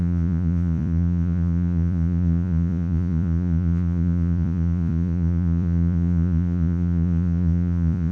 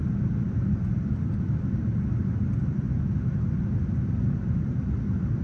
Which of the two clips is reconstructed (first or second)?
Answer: first